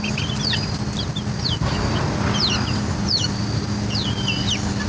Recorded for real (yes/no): yes